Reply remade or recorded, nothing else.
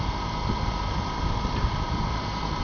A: remade